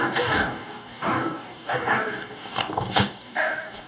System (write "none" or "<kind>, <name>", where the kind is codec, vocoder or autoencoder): codec, DAC